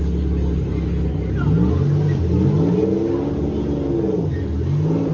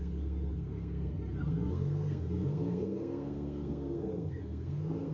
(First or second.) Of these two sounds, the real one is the first